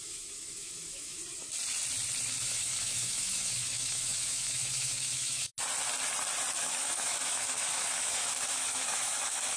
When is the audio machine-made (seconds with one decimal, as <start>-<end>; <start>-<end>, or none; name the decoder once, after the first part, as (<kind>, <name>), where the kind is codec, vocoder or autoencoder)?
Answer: 0.0-1.2 (autoencoder, DAC-VAE); 2.4-5.5; 6.6-9.6